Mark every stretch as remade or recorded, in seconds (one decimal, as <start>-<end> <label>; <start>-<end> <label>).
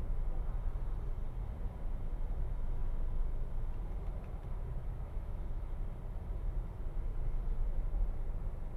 0.0-4.8 recorded; 4.8-5.7 remade; 5.7-8.8 recorded